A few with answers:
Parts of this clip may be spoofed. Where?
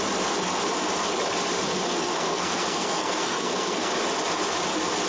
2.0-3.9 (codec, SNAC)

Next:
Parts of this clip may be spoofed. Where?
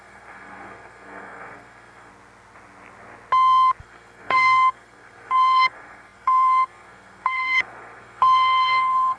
0.0-2.1 (codec, SNAC); 3.8-9.2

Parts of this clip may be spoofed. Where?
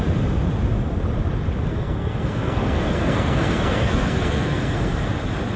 1.7-5.1 (codec, SNAC)